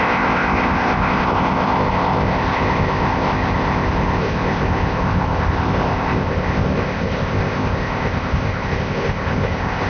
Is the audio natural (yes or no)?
no